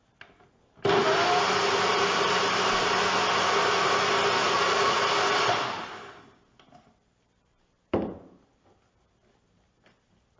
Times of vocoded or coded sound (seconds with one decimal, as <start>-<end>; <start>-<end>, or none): 4.4-5.0